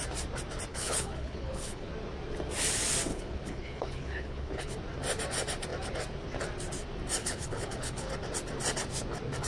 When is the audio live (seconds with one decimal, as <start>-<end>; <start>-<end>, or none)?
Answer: 0.0-0.7; 1.9-3.1; 4.7-7.2; 8.1-9.5